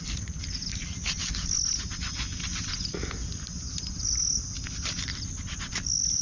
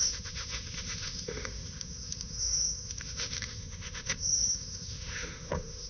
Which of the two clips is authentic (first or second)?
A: first